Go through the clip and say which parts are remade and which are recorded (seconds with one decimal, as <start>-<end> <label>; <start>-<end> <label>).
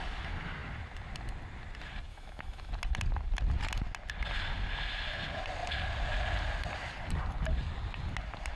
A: 0.0-2.1 recorded; 2.1-2.7 remade; 2.7-8.6 recorded